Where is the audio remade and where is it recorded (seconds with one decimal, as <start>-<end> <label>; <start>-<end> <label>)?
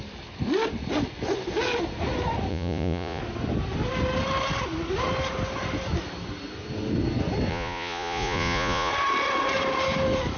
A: 0.0-2.5 recorded; 2.5-3.2 remade; 3.2-7.5 recorded; 7.5-8.9 remade; 8.9-10.4 recorded